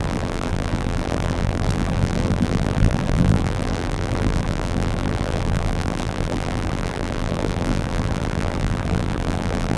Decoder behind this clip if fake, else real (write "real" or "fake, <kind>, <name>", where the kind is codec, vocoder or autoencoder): fake, vocoder, BigVGAN v2